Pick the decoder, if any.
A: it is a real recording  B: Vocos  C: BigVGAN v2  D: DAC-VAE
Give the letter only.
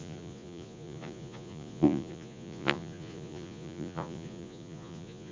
B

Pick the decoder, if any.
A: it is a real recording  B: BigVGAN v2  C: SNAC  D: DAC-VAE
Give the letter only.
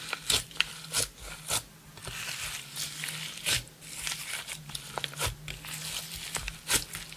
A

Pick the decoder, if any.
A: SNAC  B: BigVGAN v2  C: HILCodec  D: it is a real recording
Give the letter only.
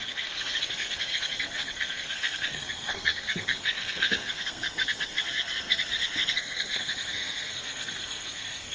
A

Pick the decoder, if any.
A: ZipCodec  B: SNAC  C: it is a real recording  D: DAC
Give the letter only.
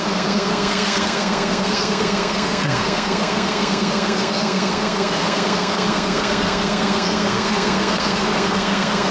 B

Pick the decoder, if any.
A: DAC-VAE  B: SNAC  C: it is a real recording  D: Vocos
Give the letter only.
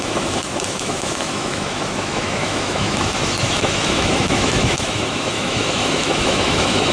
A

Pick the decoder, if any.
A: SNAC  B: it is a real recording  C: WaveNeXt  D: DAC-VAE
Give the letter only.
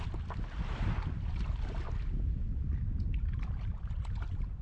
B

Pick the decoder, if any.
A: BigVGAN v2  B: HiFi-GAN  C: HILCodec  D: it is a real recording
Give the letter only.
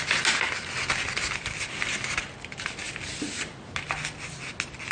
D